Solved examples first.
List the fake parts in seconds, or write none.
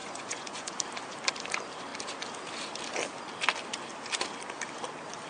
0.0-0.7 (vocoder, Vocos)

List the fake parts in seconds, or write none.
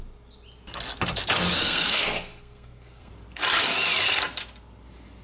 1.6-3.1 (codec, SNAC)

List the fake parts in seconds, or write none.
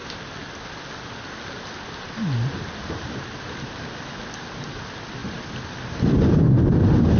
5.2-6.8 (vocoder, BigVGAN v2)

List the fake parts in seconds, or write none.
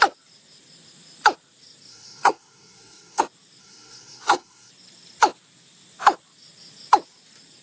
1.9-3.2 (codec, SNAC); 3.6-4.7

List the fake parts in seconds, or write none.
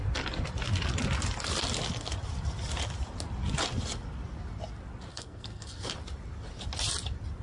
5.1-5.9 (codec, SNAC)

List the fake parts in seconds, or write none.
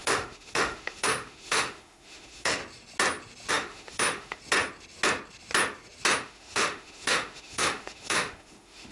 0.0-2.6 (autoencoder, DAC-VAE); 3.5-4.4; 6.2-8.9